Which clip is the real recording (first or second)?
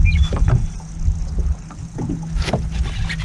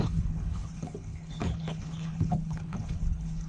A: first